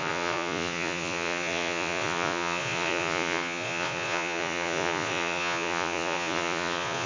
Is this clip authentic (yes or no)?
no